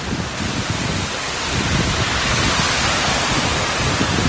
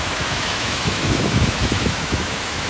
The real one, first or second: first